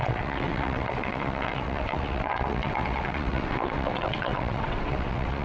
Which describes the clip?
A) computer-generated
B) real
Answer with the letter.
A